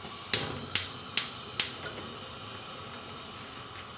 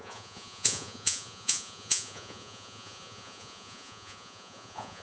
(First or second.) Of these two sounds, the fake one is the second